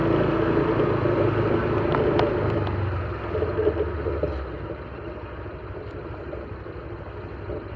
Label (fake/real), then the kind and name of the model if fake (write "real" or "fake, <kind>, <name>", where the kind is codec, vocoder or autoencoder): real